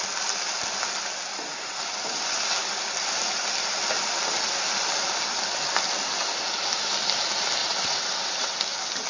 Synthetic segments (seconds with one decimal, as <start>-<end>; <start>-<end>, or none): 7.6-8.6